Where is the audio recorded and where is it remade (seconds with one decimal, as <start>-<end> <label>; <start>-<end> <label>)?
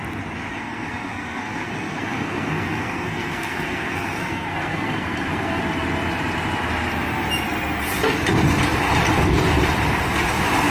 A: 0.0-0.5 recorded; 0.5-5.6 remade; 5.6-10.7 recorded